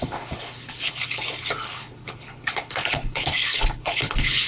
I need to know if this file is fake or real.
fake